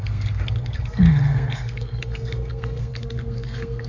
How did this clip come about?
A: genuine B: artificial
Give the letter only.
B